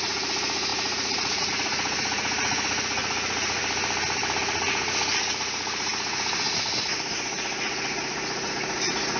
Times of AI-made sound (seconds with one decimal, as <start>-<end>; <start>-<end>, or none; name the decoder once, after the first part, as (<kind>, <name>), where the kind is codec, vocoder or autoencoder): 0.0-3.6 (vocoder, Vocos); 4.4-9.2